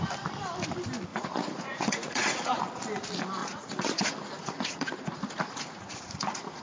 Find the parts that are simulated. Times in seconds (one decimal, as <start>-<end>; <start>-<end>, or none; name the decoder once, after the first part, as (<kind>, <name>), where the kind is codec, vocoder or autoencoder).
1.1-2.6 (vocoder, Vocos); 3.4-6.6